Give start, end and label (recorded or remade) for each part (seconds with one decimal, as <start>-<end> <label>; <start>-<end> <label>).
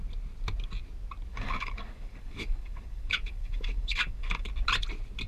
0.0-1.3 recorded; 1.3-4.5 remade; 4.5-5.3 recorded